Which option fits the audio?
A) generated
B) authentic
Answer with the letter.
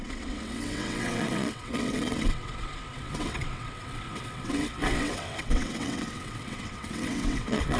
A